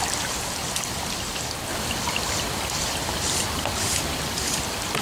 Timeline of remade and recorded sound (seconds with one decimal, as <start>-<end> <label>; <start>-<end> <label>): 0.0-1.7 recorded; 1.7-5.0 remade

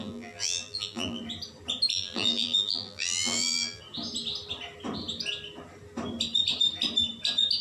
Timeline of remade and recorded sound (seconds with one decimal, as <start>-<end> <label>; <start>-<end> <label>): 0.0-1.2 remade; 1.2-1.9 recorded; 1.9-3.8 remade; 3.8-7.6 recorded

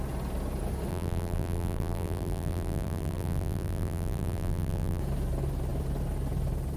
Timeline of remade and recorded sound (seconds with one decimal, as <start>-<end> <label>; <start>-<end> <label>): 0.0-0.9 recorded; 0.9-5.0 remade; 5.0-6.8 recorded

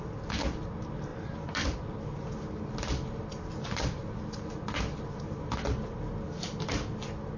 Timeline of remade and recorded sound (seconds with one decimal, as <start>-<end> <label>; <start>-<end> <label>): 0.0-7.4 recorded